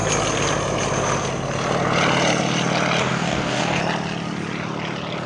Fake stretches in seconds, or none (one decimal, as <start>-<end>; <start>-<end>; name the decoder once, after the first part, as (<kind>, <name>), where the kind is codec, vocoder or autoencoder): 3.0-3.8 (codec, DAC)